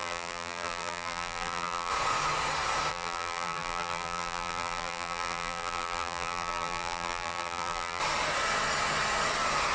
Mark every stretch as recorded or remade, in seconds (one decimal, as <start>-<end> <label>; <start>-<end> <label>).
0.0-1.9 remade; 1.9-2.9 recorded; 2.9-8.0 remade; 8.0-9.7 recorded